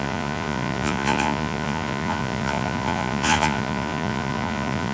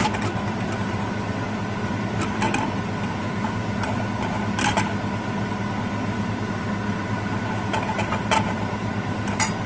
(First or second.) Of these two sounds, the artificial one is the first